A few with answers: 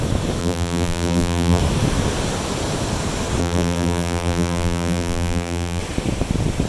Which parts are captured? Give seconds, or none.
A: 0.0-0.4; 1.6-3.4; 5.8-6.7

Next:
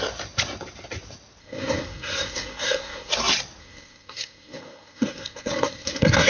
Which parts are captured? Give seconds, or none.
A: 0.0-1.4; 3.1-3.6